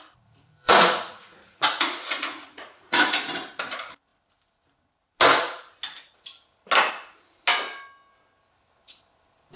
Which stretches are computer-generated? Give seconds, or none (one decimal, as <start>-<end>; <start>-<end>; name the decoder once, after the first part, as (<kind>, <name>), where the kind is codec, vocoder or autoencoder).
0.4-3.3 (vocoder, Vocos)